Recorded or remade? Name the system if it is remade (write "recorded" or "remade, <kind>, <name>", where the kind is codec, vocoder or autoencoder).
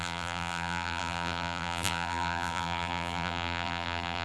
remade, vocoder, BigVGAN v2